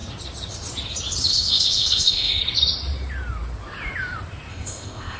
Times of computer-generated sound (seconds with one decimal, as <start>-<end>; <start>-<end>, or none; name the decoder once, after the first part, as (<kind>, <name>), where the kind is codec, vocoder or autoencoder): 1.3-2.4 (codec, ZipCodec); 4.5-5.2